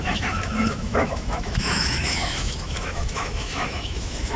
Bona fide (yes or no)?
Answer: no